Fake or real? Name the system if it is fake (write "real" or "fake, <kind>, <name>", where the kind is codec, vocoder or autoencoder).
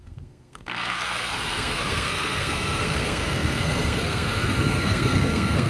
fake, codec, SNAC